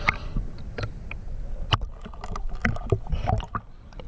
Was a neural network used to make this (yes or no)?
no